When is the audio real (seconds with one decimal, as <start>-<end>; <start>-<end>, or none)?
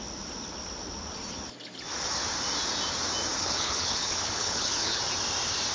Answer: 0.0-3.4; 5.0-5.7